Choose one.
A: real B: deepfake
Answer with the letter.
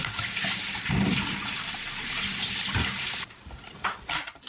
A